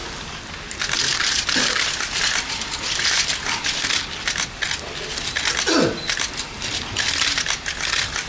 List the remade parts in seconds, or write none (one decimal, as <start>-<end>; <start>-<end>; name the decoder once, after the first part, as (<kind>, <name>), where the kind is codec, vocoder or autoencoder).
none